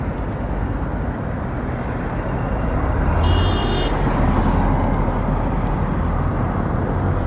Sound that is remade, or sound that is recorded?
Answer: recorded